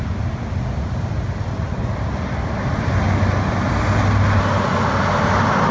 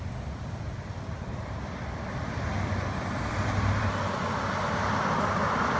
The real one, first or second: first